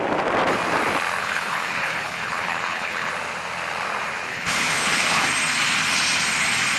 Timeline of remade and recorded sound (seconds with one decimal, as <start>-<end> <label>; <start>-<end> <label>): 0.0-1.2 recorded; 1.2-3.1 remade; 3.1-4.3 recorded; 4.3-5.3 remade; 5.3-6.8 recorded